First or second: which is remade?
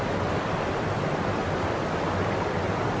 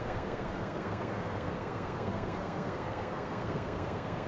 second